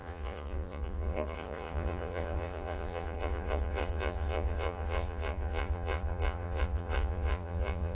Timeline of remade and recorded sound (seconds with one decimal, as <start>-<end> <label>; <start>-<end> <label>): 0.0-7.9 remade